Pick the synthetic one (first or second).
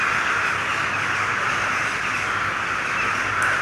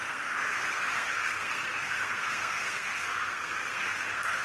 second